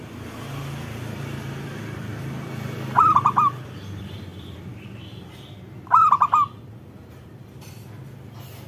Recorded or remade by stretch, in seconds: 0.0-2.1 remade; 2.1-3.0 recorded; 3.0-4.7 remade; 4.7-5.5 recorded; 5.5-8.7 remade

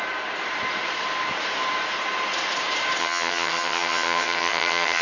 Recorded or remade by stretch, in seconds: 0.0-3.0 recorded; 3.0-5.0 remade

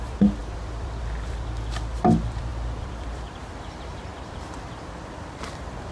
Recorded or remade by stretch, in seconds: 0.0-5.9 remade

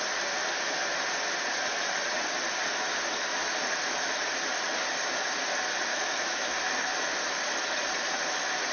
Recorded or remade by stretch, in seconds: 0.0-5.9 recorded; 5.9-6.5 remade; 6.5-8.7 recorded